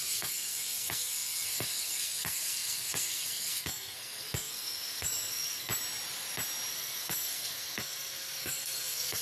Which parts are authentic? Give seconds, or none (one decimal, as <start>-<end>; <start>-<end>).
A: 5.7-6.7